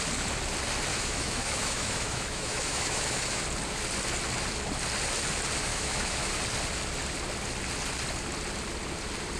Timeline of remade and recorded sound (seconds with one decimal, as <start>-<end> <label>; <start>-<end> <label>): 0.0-0.9 recorded; 0.9-3.4 remade; 3.4-5.7 recorded; 5.7-6.3 remade; 6.3-9.4 recorded